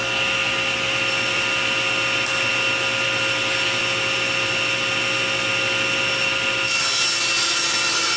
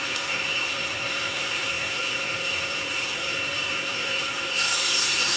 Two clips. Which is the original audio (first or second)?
first